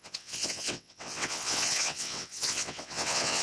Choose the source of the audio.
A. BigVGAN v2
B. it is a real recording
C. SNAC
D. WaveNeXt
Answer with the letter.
D